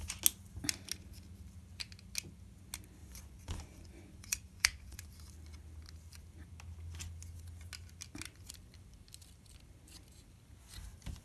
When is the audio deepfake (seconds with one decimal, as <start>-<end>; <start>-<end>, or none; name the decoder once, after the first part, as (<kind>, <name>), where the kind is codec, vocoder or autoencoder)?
3.0-5.1 (vocoder, Vocos)